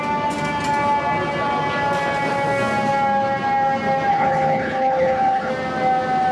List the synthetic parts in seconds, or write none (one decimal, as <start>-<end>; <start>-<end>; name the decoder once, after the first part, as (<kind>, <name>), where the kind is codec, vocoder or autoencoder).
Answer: 4.1-5.5 (codec, HILCodec)